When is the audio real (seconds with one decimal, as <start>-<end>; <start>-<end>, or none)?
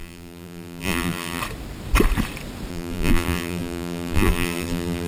1.4-2.7